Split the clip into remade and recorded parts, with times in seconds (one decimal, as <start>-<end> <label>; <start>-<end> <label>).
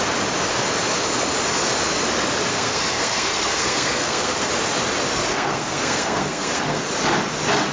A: 0.0-2.5 recorded; 2.5-4.5 remade; 4.5-5.3 recorded; 5.3-6.8 remade; 6.8-7.7 recorded